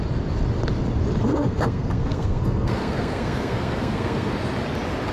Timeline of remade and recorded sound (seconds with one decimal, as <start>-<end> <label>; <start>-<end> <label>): 0.0-1.2 recorded; 1.2-4.3 remade; 4.3-5.1 recorded